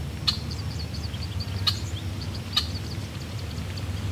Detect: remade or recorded recorded